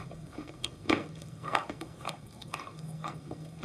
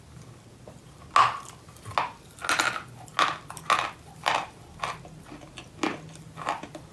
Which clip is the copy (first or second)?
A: first